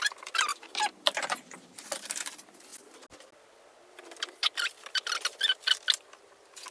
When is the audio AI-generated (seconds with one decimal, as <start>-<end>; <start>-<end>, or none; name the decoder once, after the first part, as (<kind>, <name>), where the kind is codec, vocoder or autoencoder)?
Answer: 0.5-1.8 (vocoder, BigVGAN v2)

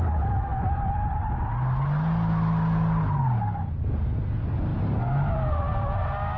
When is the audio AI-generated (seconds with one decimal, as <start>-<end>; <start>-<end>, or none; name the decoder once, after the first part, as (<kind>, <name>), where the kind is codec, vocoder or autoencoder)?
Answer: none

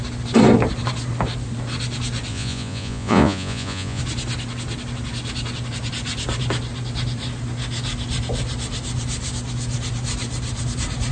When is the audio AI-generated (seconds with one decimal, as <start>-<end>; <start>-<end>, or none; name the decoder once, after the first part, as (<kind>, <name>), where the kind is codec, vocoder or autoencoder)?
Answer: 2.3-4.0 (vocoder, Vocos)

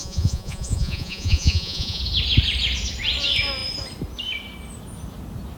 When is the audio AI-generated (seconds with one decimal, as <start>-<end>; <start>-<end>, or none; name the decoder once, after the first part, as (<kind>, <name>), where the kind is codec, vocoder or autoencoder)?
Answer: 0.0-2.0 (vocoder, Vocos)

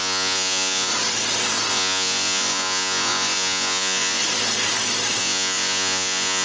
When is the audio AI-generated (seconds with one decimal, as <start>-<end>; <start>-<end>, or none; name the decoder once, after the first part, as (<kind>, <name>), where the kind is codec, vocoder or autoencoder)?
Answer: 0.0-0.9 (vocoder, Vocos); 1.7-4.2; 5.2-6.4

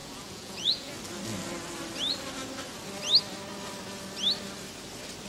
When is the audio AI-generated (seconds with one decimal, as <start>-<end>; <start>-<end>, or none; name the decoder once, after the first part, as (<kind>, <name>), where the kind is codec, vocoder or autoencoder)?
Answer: 0.0-0.9 (vocoder, Vocos)

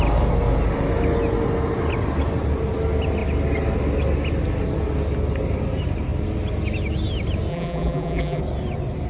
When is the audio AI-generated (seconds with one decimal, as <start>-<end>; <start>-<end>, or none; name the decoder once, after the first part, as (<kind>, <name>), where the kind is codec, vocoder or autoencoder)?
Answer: 7.5-8.4 (vocoder, BigVGAN v2)